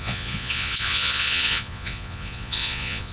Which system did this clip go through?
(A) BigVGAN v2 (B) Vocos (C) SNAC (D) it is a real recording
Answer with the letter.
B